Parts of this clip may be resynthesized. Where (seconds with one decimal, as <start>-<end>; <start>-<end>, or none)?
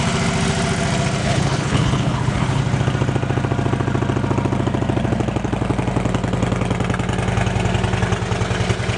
1.2-2.6